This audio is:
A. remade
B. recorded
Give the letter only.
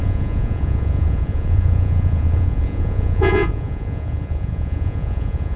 A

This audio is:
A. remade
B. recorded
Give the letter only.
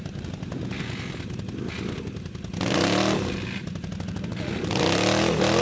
B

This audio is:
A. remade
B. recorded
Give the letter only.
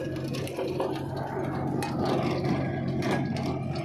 B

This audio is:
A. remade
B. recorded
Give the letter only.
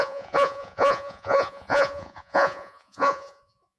A